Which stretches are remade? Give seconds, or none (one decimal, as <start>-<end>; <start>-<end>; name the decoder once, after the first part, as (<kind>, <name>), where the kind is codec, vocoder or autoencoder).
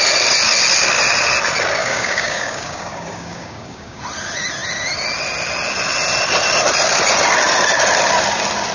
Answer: 1.8-4.0 (codec, DAC)